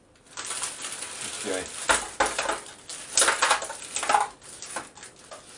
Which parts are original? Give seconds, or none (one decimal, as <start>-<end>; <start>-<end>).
0.0-5.6